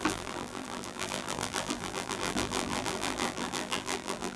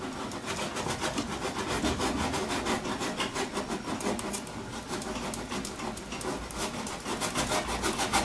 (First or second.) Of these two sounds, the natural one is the second